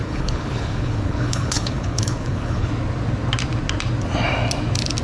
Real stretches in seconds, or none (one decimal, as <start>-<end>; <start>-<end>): 2.7-5.0